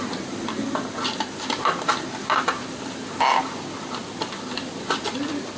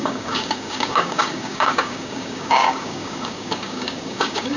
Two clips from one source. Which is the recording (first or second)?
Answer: first